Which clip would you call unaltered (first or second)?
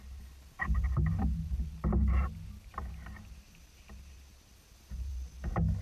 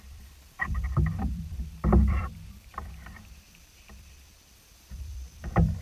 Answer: first